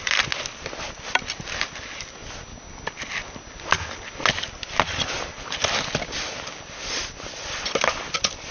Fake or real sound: real